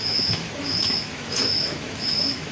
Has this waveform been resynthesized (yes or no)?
yes